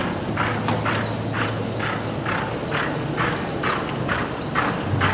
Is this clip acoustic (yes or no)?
yes